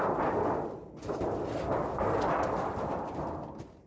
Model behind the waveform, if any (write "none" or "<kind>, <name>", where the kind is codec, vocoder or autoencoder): none